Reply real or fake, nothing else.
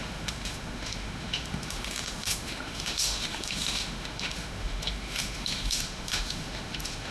fake